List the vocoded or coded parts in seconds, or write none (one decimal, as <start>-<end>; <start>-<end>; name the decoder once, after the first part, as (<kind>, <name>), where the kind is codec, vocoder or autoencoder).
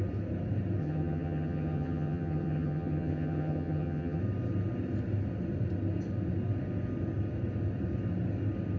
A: 0.8-4.2 (vocoder, HiFi-GAN)